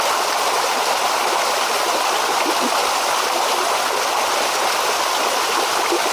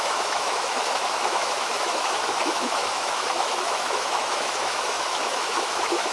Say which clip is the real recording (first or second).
first